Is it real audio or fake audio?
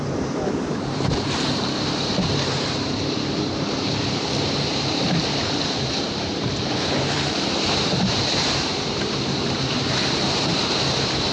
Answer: fake